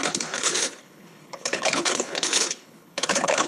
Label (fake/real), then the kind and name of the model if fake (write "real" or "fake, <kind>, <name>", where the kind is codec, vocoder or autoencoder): fake, codec, HILCodec